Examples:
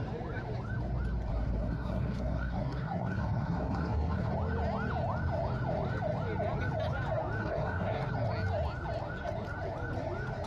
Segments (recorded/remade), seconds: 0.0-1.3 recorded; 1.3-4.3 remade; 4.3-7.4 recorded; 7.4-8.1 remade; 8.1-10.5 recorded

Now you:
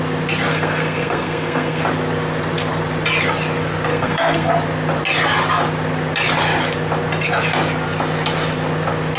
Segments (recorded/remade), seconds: 0.0-0.5 recorded; 0.5-1.8 remade; 1.8-3.9 recorded; 3.9-4.5 remade; 4.5-9.2 recorded

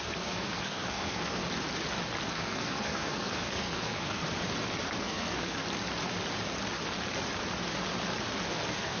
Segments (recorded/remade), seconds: 0.0-1.4 remade; 1.4-2.3 recorded; 2.3-4.2 remade; 4.2-5.0 recorded; 5.0-5.6 remade; 5.6-8.5 recorded; 8.5-9.0 remade

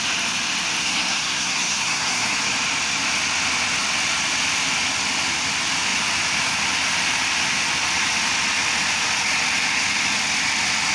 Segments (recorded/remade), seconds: 0.0-0.8 recorded; 0.8-2.4 remade; 2.4-10.9 recorded

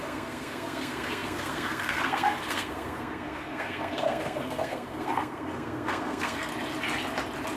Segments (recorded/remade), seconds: 0.0-6.5 remade; 6.5-7.6 recorded

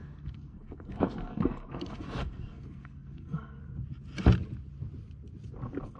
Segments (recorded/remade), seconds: 0.0-3.6 remade; 3.6-6.0 recorded